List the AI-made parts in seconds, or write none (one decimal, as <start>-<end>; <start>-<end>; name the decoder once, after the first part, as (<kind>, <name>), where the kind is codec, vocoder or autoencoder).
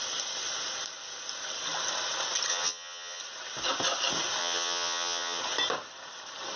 2.5-3.2 (vocoder, HiFi-GAN); 4.4-5.4